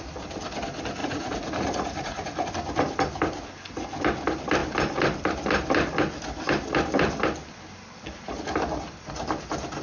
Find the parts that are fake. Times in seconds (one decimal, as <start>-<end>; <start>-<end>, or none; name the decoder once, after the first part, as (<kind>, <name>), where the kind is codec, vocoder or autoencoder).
1.0-2.5 (vocoder, Vocos)